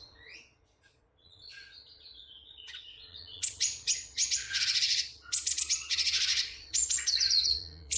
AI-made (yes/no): yes